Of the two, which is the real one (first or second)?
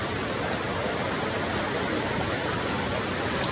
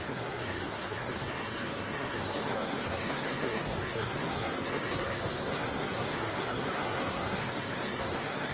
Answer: first